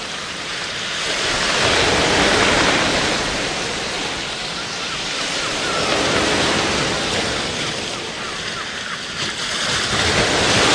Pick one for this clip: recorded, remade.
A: recorded